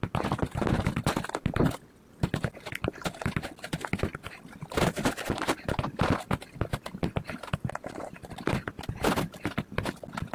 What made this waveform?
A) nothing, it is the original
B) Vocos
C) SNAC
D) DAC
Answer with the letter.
A